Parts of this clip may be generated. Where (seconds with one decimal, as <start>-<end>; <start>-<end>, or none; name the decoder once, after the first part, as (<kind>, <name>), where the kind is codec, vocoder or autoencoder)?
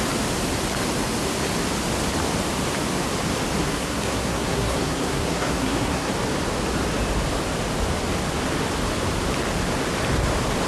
3.6-6.1 (codec, SNAC)